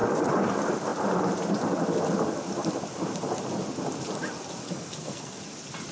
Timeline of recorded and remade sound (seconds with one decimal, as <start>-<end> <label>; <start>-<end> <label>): 0.0-4.6 recorded; 4.6-5.4 remade; 5.4-5.9 recorded